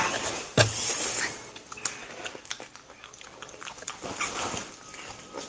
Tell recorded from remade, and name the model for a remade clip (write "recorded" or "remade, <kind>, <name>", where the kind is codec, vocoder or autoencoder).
recorded